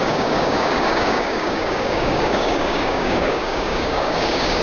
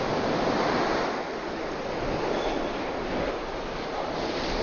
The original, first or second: second